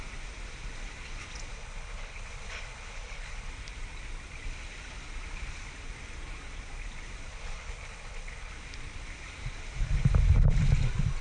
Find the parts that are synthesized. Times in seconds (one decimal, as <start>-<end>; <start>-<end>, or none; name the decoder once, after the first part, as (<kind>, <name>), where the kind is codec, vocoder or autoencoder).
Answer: 1.5-3.5 (codec, HILCodec); 7.3-8.5